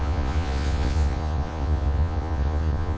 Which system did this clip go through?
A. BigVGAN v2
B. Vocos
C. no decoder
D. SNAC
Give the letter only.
B